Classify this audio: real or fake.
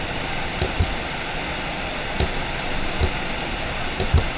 real